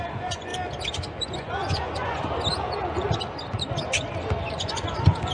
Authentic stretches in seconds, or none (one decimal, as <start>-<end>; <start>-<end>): 0.5-1.2; 2.3-4.5